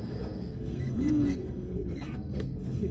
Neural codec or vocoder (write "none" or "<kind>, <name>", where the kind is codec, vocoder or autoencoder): codec, SNAC